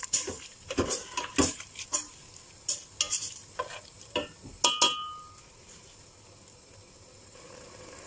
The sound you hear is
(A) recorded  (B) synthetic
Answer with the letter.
A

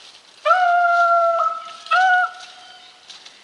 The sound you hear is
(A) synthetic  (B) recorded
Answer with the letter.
B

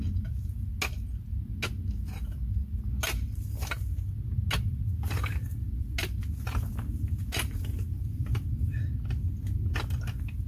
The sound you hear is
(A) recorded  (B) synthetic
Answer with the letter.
A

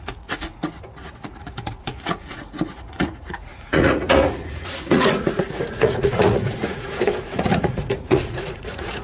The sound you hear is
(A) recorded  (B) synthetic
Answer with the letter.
B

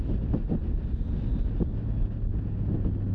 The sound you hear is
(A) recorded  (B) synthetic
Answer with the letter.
A